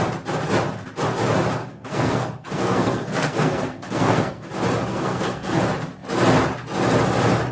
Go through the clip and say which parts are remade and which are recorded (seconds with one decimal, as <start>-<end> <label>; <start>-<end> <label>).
0.0-1.6 recorded; 1.6-4.5 remade; 4.5-4.9 recorded; 4.9-5.6 remade; 5.6-7.5 recorded